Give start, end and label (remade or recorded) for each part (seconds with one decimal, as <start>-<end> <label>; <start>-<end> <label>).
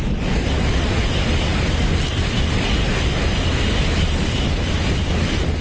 0.0-5.6 recorded